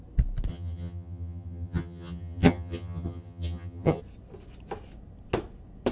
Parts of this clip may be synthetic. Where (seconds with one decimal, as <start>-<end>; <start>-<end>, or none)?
0.5-4.0